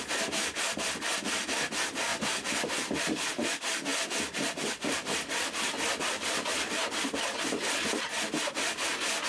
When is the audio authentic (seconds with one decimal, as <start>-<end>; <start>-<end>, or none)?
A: 0.0-1.1; 1.7-2.1; 3.0-3.9; 7.9-9.3